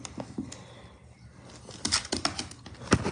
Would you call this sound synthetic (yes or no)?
no